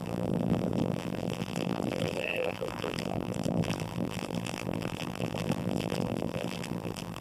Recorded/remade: remade